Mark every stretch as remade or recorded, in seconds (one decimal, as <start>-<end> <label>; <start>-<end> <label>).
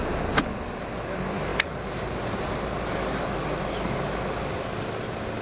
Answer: 0.0-5.4 recorded